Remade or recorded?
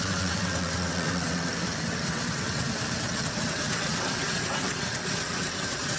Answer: remade